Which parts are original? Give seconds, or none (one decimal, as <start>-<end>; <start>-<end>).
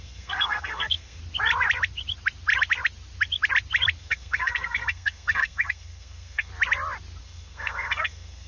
1.2-4.0; 6.5-7.2